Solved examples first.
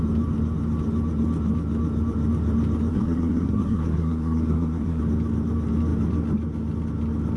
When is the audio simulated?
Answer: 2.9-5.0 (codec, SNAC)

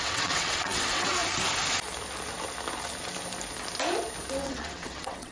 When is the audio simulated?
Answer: 0.0-1.2 (vocoder, WaveNeXt); 4.4-5.3

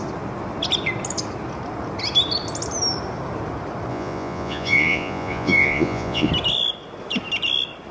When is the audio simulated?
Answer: 3.9-6.3 (vocoder, Vocos)

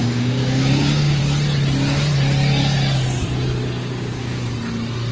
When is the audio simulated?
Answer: 0.0-1.2 (codec, DAC); 3.8-4.5

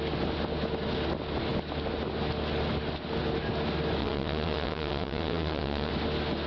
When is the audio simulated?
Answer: 4.0-5.9 (vocoder, WaveNeXt)